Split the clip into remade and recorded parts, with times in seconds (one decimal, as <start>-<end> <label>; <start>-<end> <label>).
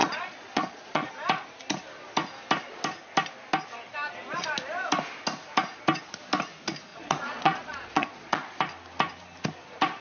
0.0-1.1 remade; 1.1-6.9 recorded; 6.9-8.6 remade; 8.6-10.0 recorded